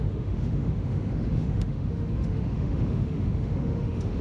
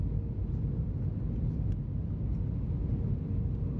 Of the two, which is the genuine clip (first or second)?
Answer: second